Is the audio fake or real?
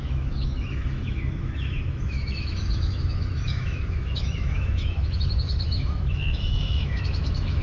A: fake